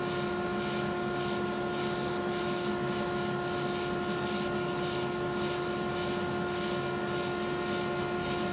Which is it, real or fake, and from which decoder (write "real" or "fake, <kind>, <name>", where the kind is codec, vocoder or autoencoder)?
real